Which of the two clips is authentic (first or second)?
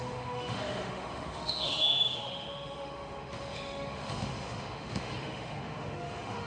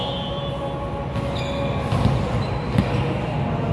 second